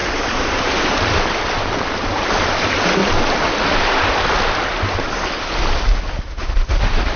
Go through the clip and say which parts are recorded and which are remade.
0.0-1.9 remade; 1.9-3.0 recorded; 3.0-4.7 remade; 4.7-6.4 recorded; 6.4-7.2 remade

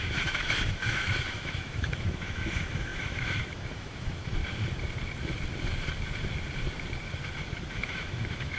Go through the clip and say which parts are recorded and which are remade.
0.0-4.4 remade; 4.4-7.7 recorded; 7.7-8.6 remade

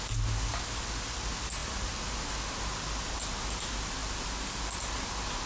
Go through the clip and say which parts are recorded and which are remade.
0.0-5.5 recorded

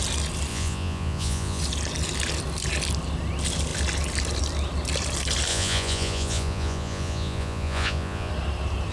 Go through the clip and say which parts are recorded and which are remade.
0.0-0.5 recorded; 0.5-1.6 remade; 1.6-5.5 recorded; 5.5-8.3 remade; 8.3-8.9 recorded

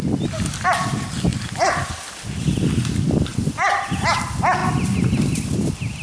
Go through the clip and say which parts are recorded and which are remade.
0.0-6.0 recorded

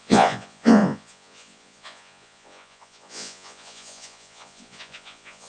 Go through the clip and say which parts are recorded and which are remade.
0.0-5.5 remade